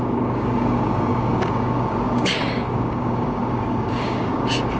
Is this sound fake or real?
fake